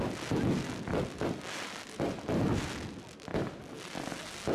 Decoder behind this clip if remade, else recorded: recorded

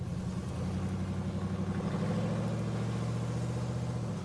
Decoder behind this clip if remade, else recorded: recorded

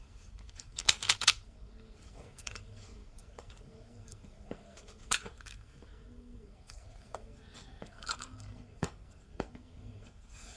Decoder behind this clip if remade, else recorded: remade, codec, SNAC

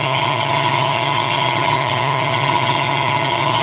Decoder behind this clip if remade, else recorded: remade, vocoder, HiFi-GAN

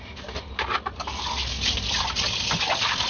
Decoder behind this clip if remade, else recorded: recorded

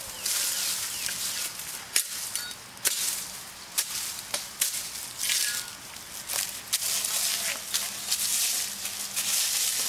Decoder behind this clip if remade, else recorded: recorded